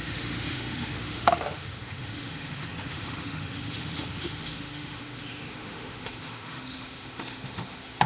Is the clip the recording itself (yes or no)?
no